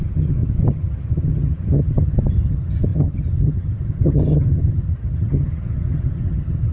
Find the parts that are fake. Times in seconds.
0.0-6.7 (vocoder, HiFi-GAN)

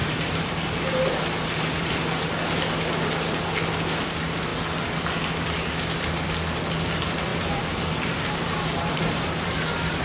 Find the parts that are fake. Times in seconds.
0.0-2.0 (vocoder, BigVGAN v2); 7.3-10.0

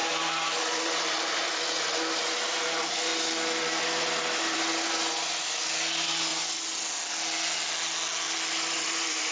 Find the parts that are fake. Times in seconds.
0.0-3.1 (vocoder, BigVGAN v2); 3.8-6.3; 8.5-9.3

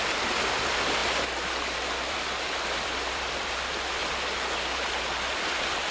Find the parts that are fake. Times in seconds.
0.0-1.0 (vocoder, BigVGAN v2); 2.1-4.0

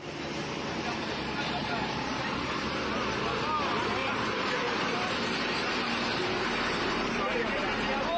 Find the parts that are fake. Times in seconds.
1.6-2.2 (vocoder, BigVGAN v2); 4.0-7.2

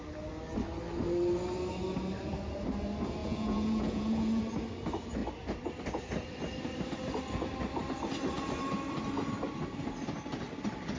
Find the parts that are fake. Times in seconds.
3.2-4.4 (vocoder, Vocos)

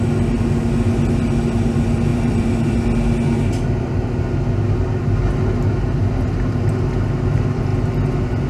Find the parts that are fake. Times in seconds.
2.1-2.7 (vocoder, BigVGAN v2)

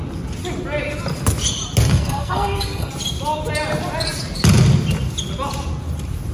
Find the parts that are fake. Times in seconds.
1.9-2.9 (codec, SNAC)